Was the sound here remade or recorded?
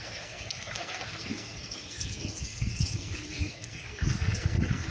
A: remade